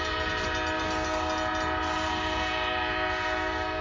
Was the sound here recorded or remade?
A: recorded